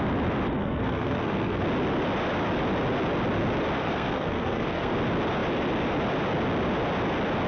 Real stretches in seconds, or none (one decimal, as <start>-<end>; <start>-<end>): 0.0-0.6; 1.6-3.8; 4.9-7.5